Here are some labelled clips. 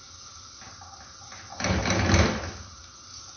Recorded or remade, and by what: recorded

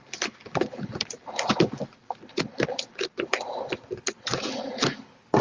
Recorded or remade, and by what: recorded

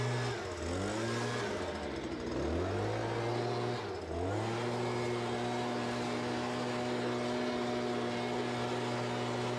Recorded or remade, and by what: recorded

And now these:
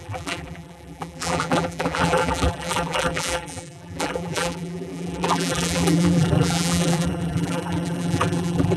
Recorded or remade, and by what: remade, vocoder, BigVGAN v2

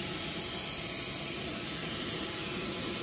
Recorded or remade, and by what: recorded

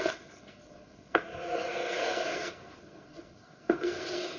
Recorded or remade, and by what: remade, codec, SNAC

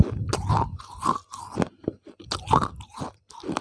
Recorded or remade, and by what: recorded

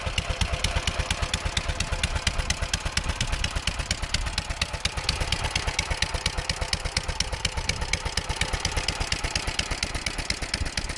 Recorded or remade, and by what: recorded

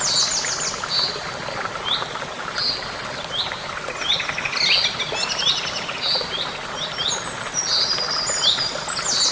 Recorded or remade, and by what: recorded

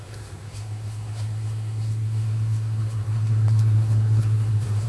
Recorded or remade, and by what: remade, codec, SNAC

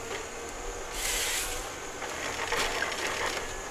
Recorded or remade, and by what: recorded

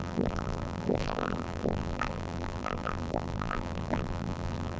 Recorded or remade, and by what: remade, vocoder, BigVGAN v2